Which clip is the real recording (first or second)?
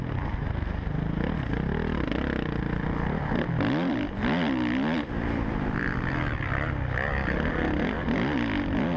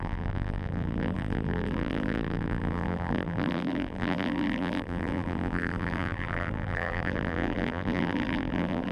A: first